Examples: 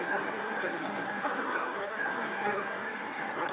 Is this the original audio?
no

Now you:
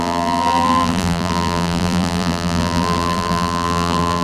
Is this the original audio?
no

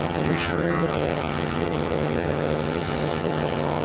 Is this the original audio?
no